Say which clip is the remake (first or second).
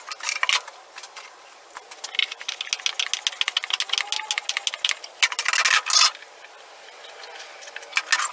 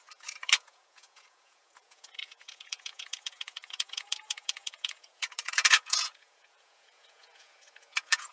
second